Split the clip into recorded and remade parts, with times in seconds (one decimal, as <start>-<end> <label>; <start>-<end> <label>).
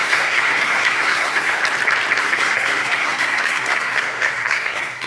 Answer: 0.0-1.6 remade; 1.6-2.2 recorded; 2.2-5.1 remade